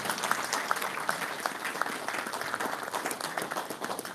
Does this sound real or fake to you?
real